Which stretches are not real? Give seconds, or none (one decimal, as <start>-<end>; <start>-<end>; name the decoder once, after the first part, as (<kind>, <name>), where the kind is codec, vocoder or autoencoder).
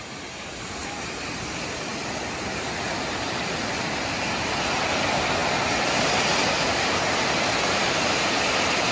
none